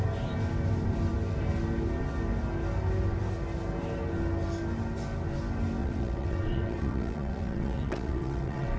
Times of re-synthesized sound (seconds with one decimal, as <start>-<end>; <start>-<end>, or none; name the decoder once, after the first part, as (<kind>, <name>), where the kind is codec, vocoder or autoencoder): 5.8-8.8 (vocoder, WaveNeXt)